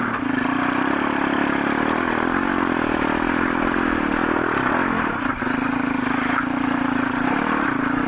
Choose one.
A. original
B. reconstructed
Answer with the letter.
A